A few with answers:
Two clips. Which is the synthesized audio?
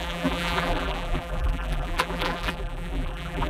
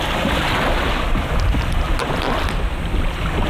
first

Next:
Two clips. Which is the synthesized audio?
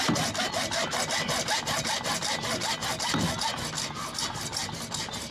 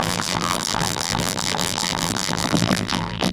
second